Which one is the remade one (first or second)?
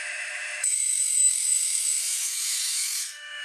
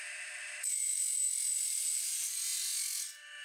first